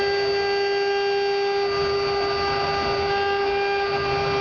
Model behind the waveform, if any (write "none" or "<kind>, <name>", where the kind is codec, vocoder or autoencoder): none